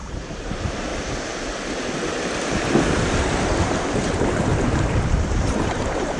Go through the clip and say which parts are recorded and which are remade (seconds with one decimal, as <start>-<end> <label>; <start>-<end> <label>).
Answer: 0.0-0.9 remade; 0.9-4.4 recorded; 4.4-6.2 remade